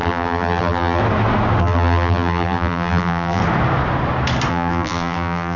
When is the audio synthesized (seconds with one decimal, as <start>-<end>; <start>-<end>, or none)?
0.0-1.0; 1.6-3.4; 4.5-5.6